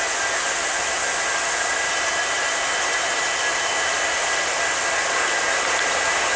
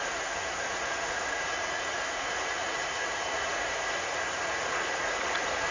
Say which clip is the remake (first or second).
second